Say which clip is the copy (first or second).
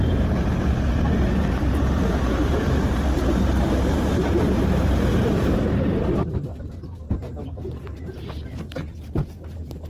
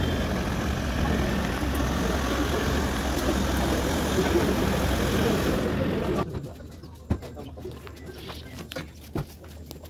first